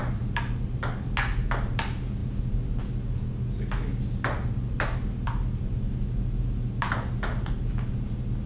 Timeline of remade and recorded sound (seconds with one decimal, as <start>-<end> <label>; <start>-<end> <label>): 0.0-8.5 recorded